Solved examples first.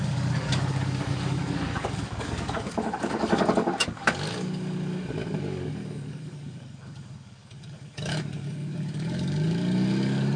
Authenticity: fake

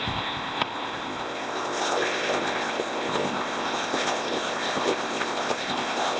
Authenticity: fake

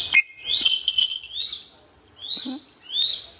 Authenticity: real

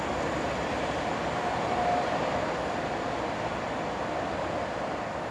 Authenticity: real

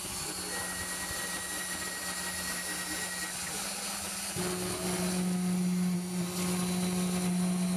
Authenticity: real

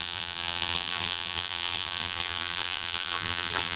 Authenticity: fake